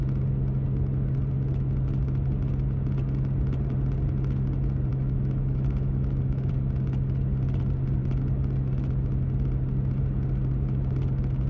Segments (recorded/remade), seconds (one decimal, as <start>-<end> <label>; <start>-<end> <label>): 0.0-4.9 recorded; 4.9-6.5 remade; 6.5-11.5 recorded